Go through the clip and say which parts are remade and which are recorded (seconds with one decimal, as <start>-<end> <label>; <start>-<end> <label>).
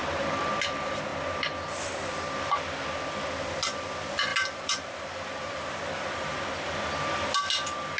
0.0-0.5 remade; 0.5-4.3 recorded; 4.3-6.4 remade; 6.4-8.0 recorded